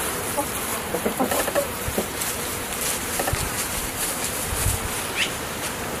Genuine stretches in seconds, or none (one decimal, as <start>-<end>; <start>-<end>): 0.0-0.7; 4.3-5.2